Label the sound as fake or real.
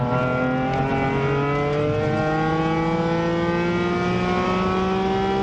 real